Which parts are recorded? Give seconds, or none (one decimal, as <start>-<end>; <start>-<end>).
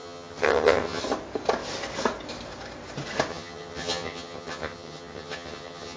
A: 1.0-3.3